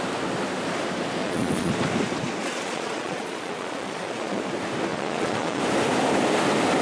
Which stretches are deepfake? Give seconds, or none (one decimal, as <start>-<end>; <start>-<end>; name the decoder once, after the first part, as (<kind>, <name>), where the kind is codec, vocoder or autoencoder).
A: 1.2-1.7 (vocoder, Vocos); 2.4-4.4; 4.9-5.6